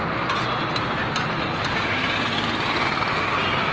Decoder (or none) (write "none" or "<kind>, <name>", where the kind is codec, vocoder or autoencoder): none